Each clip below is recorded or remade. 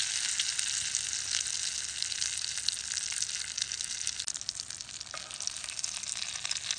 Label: recorded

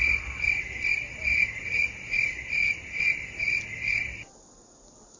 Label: recorded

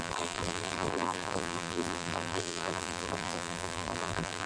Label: remade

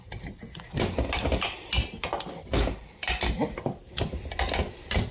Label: recorded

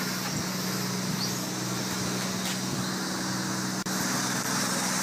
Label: recorded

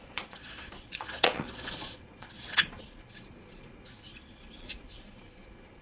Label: remade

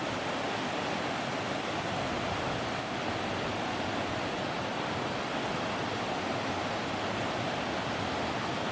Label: recorded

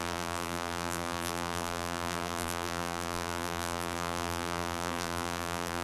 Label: remade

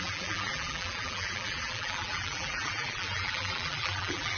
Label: remade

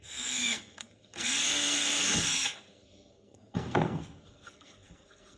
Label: remade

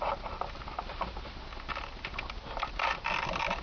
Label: recorded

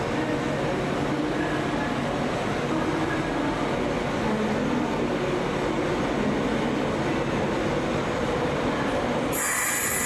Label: recorded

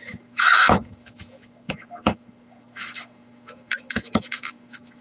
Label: remade